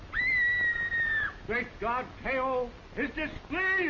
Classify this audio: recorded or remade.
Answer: recorded